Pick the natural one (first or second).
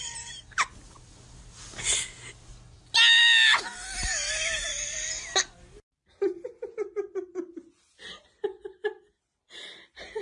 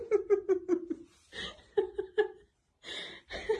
first